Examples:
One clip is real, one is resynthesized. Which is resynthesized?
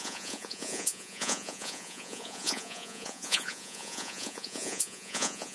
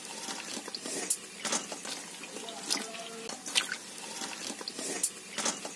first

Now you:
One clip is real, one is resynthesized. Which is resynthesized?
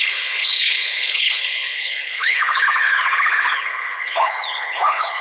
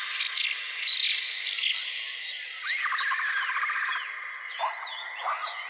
first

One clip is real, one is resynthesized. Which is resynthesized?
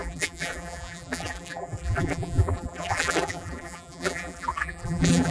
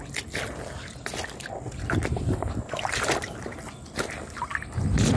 first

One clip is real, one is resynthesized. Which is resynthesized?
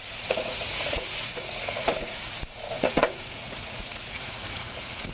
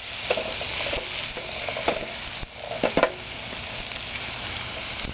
first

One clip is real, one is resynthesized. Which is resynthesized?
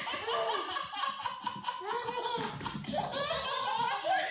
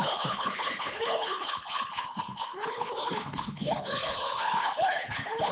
second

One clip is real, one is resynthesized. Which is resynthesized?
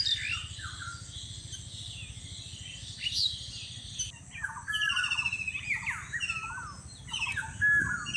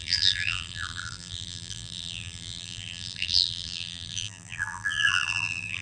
second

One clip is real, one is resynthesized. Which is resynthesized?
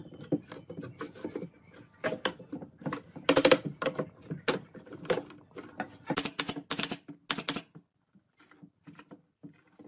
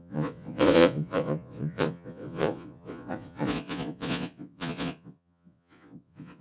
second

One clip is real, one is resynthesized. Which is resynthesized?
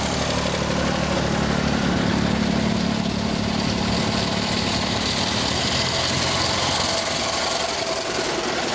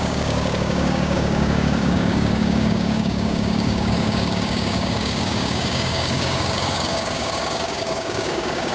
second